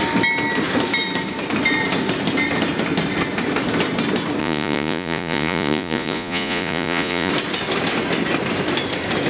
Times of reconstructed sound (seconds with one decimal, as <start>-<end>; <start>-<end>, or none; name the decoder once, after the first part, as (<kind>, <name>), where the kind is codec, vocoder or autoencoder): 4.4-7.3 (vocoder, Vocos)